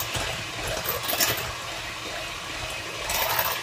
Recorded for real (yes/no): yes